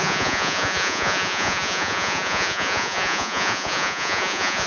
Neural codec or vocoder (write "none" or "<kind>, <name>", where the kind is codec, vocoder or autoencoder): vocoder, Vocos